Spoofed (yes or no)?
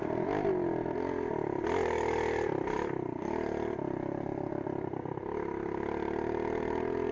no